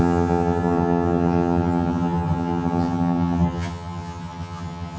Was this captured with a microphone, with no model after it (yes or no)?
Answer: no